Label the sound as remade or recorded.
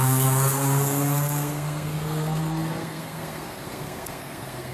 remade